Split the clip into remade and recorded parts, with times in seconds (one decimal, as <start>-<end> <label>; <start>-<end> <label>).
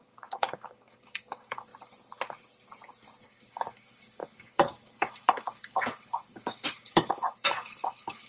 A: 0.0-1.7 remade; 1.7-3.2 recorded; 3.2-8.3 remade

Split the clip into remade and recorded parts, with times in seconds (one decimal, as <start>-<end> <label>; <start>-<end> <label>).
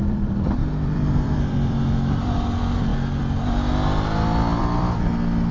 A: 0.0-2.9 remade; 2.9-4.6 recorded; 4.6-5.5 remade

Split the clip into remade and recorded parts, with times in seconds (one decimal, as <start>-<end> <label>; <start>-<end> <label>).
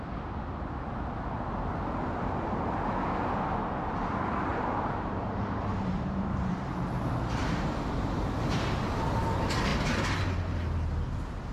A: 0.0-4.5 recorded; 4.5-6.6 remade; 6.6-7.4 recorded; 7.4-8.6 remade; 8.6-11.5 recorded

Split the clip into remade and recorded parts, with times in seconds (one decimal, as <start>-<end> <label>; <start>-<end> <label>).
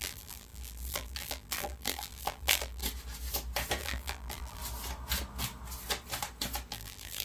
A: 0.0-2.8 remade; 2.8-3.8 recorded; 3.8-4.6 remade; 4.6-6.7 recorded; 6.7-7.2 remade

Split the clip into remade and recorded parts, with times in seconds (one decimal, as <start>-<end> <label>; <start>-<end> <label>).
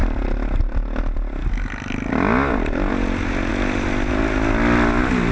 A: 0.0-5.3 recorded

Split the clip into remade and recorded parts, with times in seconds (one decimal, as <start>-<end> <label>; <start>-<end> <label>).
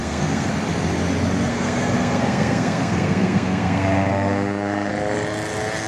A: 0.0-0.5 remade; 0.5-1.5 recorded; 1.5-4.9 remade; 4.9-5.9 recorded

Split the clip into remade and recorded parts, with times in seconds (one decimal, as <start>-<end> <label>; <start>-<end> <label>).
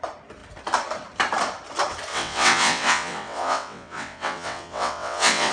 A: 0.0-2.1 recorded; 2.1-5.5 remade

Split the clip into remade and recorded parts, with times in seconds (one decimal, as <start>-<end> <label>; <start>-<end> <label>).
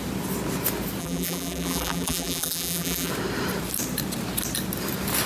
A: 0.0-1.0 recorded; 1.0-3.1 remade; 3.1-5.3 recorded